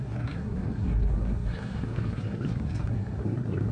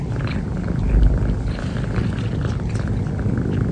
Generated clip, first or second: first